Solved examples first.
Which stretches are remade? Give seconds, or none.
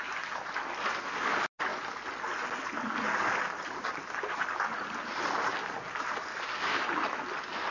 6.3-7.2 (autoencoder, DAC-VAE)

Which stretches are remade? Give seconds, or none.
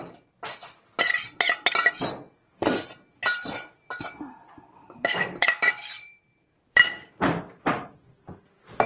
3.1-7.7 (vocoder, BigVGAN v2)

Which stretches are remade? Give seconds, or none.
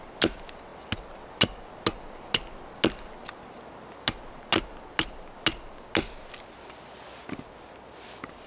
none